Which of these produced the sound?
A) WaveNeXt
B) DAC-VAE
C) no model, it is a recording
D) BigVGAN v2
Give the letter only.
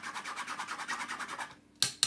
C